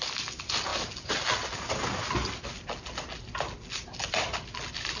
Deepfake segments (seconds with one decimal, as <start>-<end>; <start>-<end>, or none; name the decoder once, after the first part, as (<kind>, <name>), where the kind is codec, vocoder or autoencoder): none